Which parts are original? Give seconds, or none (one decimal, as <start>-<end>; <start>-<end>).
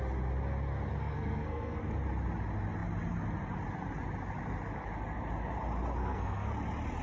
0.0-1.0; 1.8-6.0; 6.5-7.0